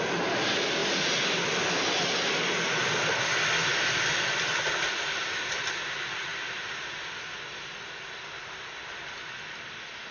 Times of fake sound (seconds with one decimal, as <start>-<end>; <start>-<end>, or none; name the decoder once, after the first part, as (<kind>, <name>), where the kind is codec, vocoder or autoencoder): 3.7-5.6 (vocoder, BigVGAN v2); 6.3-7.2